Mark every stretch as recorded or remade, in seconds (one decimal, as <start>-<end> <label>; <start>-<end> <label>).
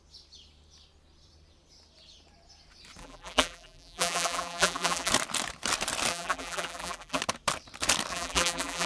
0.0-3.0 recorded; 3.0-5.1 remade; 5.1-6.1 recorded; 6.1-7.2 remade; 7.2-8.1 recorded; 8.1-8.9 remade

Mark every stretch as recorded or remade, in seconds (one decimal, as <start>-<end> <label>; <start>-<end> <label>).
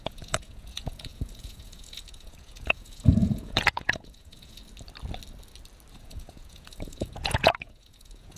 0.0-4.6 remade; 4.6-5.9 recorded; 5.9-8.4 remade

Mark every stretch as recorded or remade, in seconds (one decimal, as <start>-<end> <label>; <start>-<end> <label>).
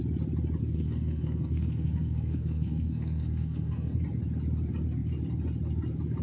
0.0-0.6 recorded; 0.6-4.0 remade; 4.0-6.2 recorded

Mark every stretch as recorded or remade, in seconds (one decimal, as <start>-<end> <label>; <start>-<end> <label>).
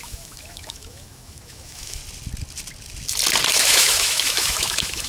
0.0-2.0 remade; 2.0-3.5 recorded; 3.5-5.1 remade